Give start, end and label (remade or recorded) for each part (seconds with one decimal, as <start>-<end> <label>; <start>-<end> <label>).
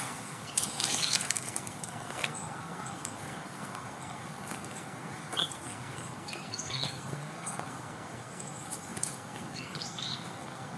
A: 0.0-10.8 remade